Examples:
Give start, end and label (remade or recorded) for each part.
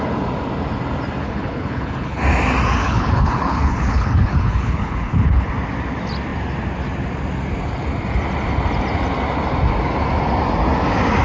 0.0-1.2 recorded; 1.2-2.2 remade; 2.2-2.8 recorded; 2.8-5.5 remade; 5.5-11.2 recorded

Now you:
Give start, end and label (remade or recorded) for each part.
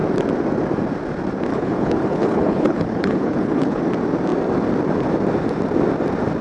0.0-1.5 recorded; 1.5-3.8 remade; 3.8-6.4 recorded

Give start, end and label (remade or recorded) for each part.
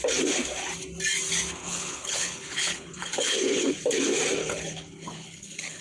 0.0-1.6 recorded; 1.6-3.7 remade; 3.7-4.4 recorded; 4.4-5.8 remade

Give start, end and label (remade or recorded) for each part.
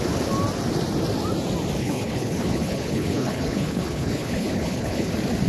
0.0-1.8 recorded; 1.8-5.1 remade; 5.1-5.5 recorded